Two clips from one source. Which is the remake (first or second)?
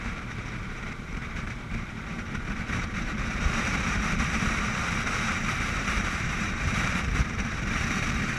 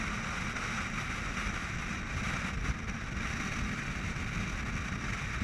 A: first